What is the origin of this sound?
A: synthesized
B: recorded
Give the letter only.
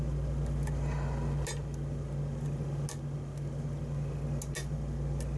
B